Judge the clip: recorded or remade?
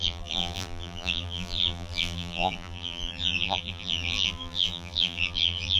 remade